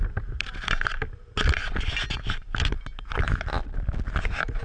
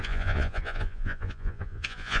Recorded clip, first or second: first